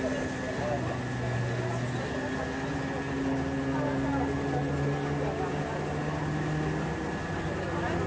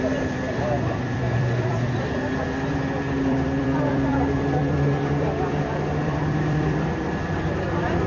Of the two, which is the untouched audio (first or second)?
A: first